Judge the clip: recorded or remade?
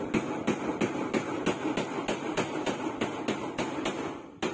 recorded